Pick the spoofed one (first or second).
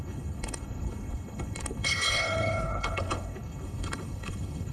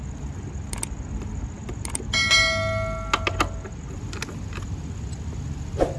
first